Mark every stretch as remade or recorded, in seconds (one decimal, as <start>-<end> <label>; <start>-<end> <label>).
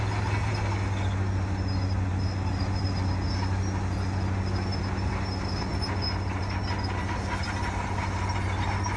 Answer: 0.0-9.0 recorded